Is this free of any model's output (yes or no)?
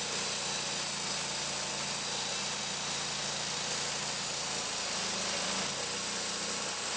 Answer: yes